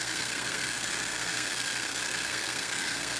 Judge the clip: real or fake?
fake